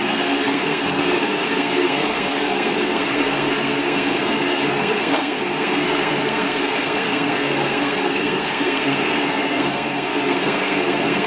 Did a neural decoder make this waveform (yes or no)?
yes